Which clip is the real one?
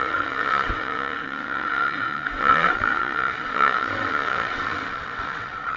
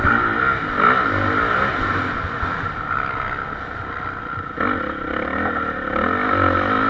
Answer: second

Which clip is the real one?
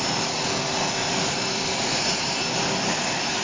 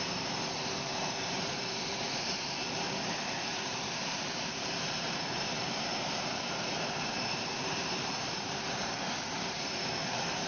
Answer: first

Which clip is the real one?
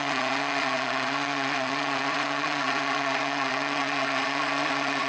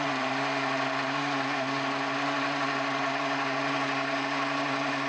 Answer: second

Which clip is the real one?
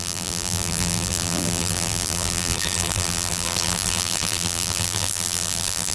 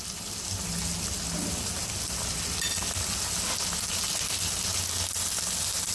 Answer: second